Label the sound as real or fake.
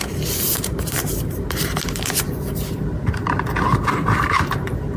fake